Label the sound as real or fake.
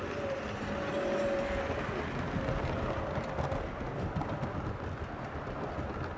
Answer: real